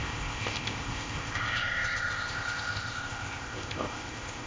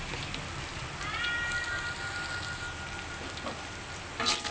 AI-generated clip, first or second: first